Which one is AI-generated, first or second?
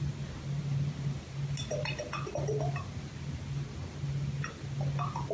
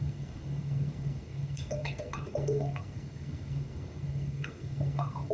second